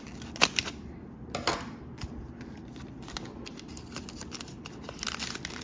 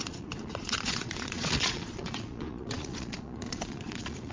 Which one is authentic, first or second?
first